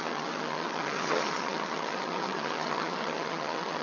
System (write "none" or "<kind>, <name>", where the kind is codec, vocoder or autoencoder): vocoder, HiFi-GAN